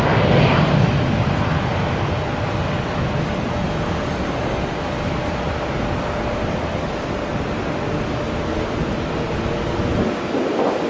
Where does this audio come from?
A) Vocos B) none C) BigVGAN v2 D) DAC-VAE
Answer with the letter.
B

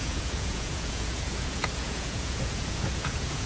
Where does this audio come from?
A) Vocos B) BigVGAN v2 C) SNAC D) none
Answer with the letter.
A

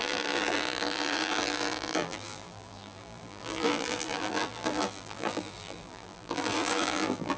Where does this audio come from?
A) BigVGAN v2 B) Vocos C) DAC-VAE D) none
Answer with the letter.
A